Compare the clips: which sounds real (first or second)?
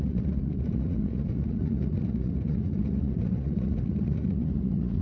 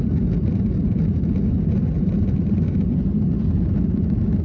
second